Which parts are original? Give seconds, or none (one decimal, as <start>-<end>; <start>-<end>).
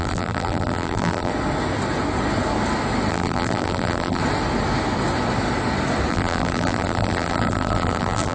1.3-3.1; 4.2-6.1